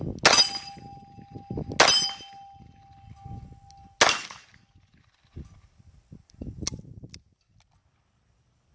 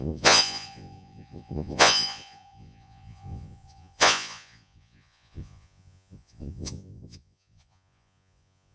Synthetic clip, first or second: second